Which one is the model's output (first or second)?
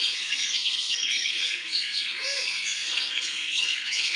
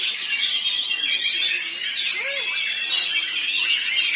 first